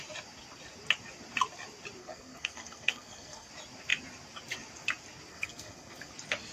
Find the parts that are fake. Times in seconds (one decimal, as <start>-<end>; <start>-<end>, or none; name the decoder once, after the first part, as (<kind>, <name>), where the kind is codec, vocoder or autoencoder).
2.0-3.5 (codec, SNAC); 5.3-6.1